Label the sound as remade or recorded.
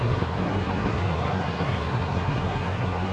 remade